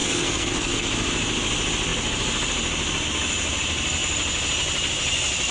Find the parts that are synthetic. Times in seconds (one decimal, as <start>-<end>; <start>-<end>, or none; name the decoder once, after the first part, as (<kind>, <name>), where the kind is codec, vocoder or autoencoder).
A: 0.0-0.9 (codec, SNAC)